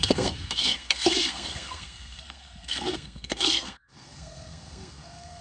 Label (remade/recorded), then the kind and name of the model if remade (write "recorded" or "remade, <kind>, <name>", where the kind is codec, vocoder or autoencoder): remade, codec, SNAC